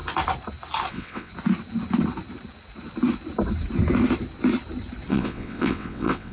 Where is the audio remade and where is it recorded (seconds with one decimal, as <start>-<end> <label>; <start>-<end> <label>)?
0.0-0.9 recorded; 0.9-1.3 remade; 1.3-5.1 recorded; 5.1-6.3 remade